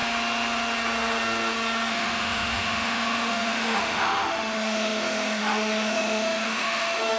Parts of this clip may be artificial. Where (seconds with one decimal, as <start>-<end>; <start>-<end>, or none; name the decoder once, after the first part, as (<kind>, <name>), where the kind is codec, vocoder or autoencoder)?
1.9-7.2 (autoencoder, DAC-VAE)